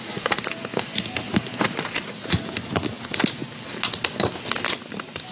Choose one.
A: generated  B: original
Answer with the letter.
B